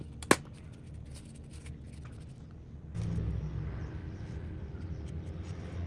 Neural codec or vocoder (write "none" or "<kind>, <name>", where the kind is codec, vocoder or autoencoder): none